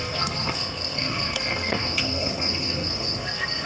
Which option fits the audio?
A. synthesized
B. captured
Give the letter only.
A